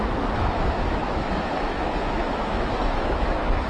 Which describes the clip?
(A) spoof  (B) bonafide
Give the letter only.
A